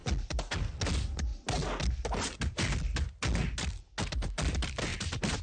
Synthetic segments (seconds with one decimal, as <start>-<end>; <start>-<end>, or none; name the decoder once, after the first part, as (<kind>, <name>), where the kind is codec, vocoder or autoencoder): 4.9-5.4 (vocoder, BigVGAN v2)